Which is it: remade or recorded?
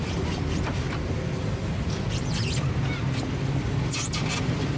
recorded